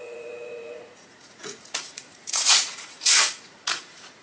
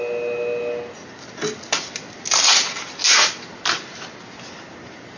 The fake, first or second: first